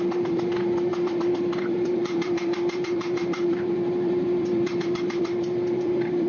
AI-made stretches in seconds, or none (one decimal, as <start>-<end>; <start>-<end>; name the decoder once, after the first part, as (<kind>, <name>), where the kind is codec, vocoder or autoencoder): 0.0-6.3 (vocoder, BigVGAN v2)